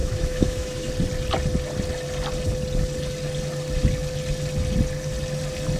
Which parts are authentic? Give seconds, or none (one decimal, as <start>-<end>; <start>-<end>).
0.9-5.8